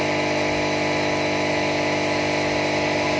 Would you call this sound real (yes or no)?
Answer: yes